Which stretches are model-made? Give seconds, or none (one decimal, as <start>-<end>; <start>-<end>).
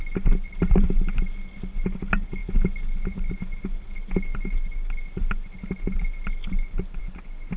none